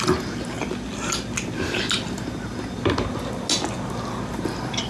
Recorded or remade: recorded